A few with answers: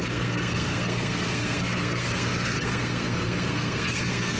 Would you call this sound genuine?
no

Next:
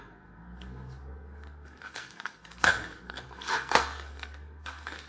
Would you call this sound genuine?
no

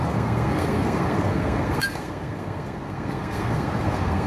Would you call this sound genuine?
no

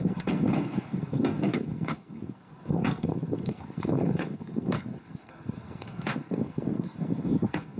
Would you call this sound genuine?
no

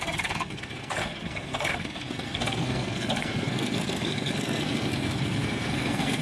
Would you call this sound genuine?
no